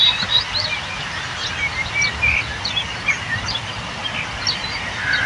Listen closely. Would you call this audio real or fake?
real